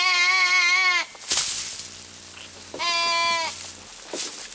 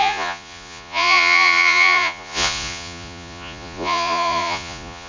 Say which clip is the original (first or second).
first